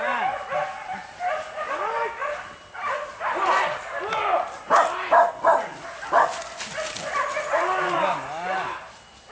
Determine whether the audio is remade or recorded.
recorded